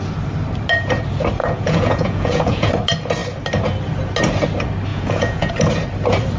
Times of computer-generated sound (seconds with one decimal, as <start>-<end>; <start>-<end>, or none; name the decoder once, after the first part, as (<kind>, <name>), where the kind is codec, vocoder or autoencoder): 1.4-2.7 (vocoder, Vocos); 4.9-5.5